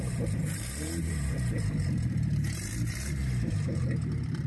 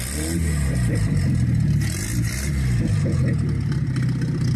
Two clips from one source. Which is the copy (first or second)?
first